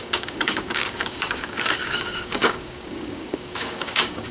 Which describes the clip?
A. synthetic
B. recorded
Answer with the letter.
A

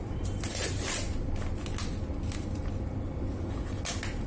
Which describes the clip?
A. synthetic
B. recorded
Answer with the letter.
B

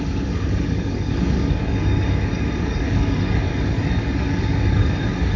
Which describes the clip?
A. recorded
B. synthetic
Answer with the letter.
B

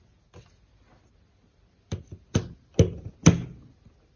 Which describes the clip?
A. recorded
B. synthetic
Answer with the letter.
A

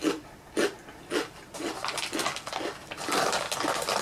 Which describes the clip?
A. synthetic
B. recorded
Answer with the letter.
B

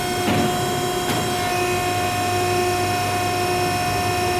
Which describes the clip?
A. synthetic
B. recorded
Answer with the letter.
B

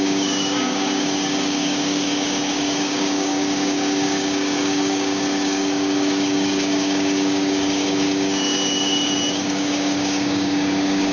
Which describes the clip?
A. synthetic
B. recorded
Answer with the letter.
A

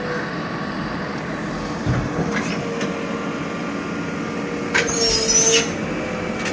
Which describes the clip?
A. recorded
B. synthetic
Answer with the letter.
A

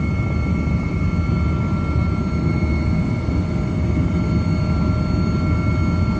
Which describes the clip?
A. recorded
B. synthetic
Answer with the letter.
A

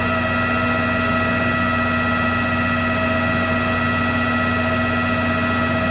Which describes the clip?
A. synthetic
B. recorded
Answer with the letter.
B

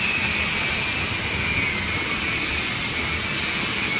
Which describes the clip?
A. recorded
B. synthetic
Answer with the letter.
A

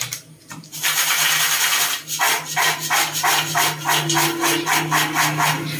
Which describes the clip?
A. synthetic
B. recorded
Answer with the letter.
B